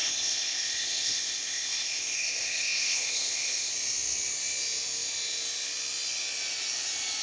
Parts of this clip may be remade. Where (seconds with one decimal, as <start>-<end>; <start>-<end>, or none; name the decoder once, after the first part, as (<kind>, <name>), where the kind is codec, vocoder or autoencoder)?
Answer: 0.0-3.7 (codec, ZipCodec)

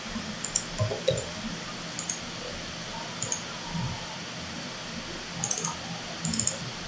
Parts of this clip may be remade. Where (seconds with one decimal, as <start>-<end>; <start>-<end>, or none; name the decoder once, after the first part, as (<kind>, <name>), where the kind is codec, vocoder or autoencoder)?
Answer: none